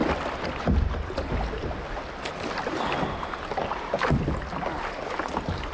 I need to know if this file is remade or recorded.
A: recorded